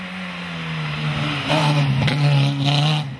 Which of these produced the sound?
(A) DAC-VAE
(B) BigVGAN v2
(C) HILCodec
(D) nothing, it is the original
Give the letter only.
D